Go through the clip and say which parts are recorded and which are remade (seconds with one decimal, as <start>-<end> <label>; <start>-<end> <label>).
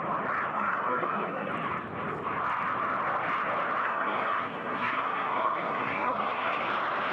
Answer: 0.0-0.5 recorded; 0.5-1.5 remade; 1.5-3.8 recorded; 3.8-6.6 remade; 6.6-7.1 recorded